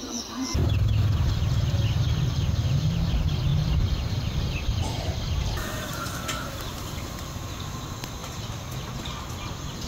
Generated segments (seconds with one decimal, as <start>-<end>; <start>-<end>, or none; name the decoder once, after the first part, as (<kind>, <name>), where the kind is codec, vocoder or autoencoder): 3.5-6.6 (vocoder, BigVGAN v2)